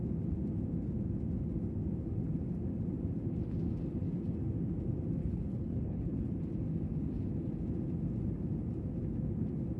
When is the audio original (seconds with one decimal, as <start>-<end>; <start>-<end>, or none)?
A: 0.0-5.2; 6.3-9.8